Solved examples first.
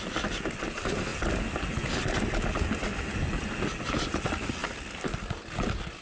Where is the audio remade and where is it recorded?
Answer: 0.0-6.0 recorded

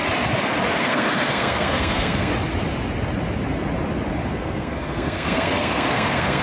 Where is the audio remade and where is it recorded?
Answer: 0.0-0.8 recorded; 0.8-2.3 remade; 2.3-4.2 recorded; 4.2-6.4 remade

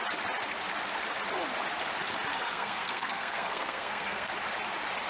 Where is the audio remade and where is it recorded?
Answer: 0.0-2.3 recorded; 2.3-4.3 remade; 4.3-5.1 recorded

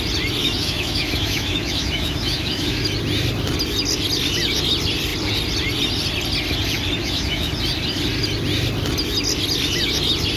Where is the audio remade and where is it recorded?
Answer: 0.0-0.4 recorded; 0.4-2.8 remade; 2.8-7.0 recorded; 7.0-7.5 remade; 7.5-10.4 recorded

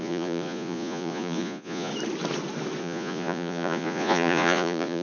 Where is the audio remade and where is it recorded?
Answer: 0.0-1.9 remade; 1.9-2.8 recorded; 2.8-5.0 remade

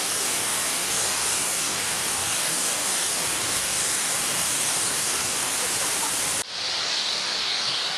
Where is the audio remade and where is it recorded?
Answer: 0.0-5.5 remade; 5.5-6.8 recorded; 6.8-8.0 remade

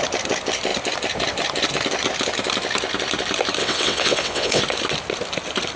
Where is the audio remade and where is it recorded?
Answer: 0.0-3.6 recorded; 3.6-4.6 remade; 4.6-5.8 recorded